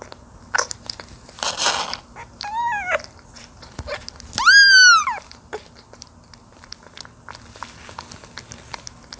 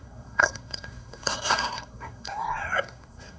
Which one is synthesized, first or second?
second